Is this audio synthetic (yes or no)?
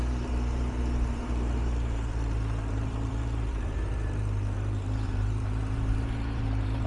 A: yes